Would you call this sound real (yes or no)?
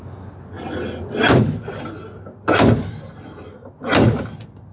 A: yes